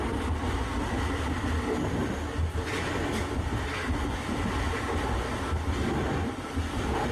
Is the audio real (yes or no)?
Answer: yes